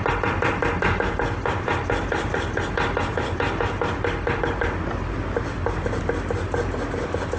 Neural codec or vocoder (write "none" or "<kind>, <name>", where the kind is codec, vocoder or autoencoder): none